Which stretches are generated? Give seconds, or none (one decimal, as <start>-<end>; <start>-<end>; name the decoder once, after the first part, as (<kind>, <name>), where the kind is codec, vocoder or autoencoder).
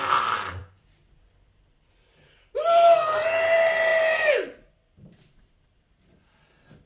none